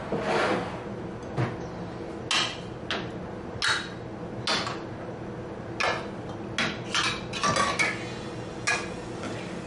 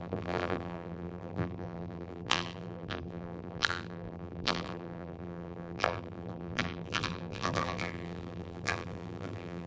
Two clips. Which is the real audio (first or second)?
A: first